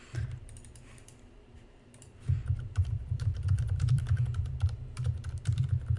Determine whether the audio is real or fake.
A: fake